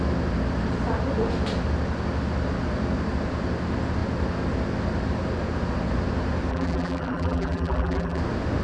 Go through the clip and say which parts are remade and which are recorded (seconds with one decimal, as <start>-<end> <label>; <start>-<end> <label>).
0.0-6.5 recorded; 6.5-8.2 remade; 8.2-8.6 recorded